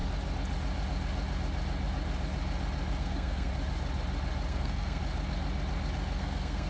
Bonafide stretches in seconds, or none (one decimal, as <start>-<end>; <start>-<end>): 0.0-3.0; 3.5-4.5; 5.0-6.2